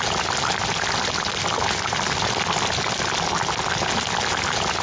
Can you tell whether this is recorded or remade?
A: recorded